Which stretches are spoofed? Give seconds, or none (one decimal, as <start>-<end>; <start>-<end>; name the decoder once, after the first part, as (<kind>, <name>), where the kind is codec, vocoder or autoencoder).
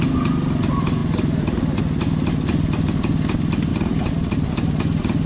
3.7-4.8 (vocoder, BigVGAN v2)